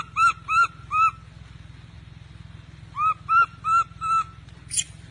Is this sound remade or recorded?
recorded